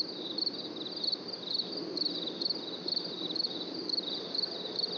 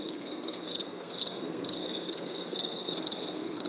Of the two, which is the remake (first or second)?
second